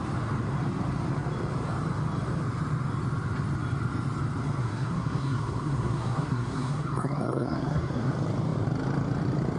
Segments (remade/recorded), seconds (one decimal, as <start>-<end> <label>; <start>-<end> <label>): 0.0-4.6 recorded; 4.6-8.1 remade; 8.1-9.6 recorded